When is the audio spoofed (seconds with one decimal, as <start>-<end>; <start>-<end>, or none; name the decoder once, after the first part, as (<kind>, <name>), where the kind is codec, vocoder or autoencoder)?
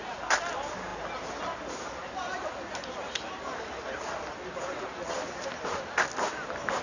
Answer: 2.3-3.9 (vocoder, BigVGAN v2)